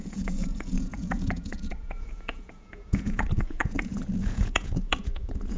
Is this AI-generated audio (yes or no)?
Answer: yes